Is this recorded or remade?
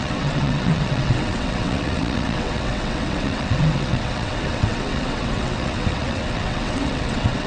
remade